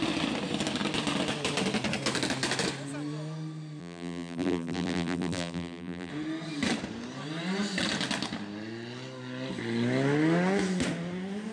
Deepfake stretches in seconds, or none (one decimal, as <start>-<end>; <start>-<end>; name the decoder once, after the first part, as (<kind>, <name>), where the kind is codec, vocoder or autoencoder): 3.8-6.1 (vocoder, BigVGAN v2)